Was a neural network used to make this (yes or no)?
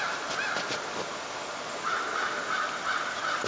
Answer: no